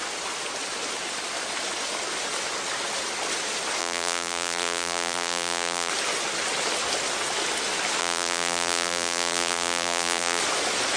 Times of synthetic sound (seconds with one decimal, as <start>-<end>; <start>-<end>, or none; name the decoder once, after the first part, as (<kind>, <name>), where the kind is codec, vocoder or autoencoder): 3.8-5.9 (vocoder, BigVGAN v2); 8.0-10.4